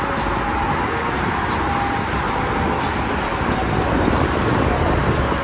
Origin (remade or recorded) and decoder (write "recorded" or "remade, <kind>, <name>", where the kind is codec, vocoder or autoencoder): recorded